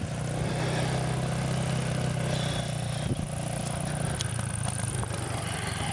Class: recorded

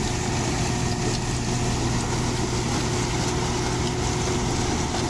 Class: recorded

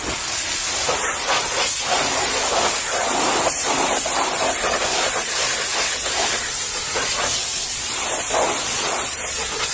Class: recorded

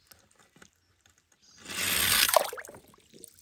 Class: recorded